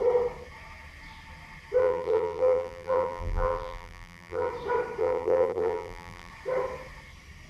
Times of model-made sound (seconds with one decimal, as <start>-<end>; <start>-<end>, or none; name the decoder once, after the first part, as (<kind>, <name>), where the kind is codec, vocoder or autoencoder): 1.8-4.5 (vocoder, BigVGAN v2); 5.0-6.3